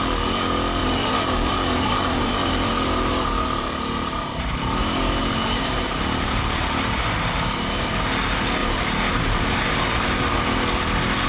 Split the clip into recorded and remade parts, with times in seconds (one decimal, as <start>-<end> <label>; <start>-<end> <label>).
0.0-0.8 recorded; 0.8-6.0 remade; 6.0-8.6 recorded; 8.6-10.4 remade; 10.4-11.3 recorded